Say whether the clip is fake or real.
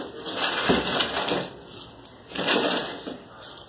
real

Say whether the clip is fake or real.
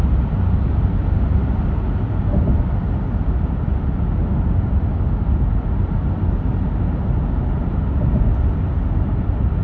real